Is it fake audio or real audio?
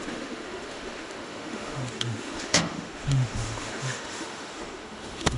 fake